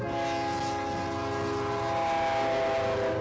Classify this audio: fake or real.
real